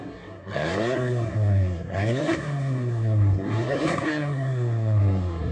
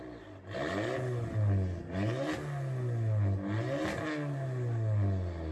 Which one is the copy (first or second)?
first